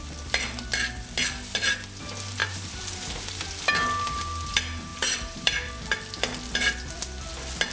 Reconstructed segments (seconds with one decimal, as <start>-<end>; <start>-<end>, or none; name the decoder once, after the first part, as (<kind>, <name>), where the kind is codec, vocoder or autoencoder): 2.4-3.2 (vocoder, BigVGAN v2); 4.9-5.7